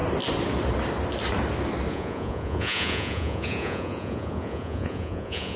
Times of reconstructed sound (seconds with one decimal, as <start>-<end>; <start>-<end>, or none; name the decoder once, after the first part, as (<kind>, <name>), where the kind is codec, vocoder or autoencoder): 1.9-5.6 (vocoder, Vocos)